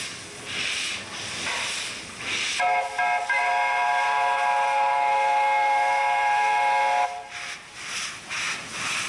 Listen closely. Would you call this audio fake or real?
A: real